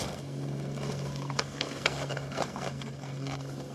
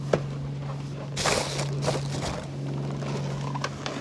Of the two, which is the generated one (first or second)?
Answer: first